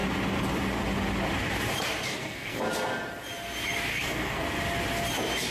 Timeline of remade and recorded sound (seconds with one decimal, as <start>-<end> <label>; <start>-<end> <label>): 0.0-2.1 recorded; 2.1-2.6 remade; 2.6-3.9 recorded; 3.9-4.4 remade; 4.4-5.5 recorded